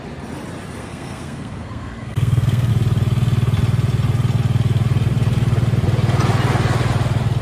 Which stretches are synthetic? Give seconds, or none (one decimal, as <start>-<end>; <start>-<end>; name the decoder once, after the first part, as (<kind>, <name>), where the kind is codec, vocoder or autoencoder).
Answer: 0.8-2.7 (codec, SNAC)